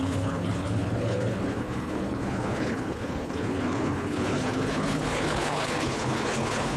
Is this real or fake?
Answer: fake